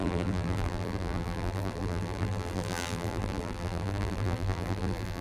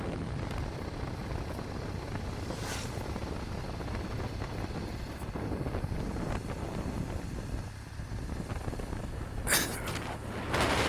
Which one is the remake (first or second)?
first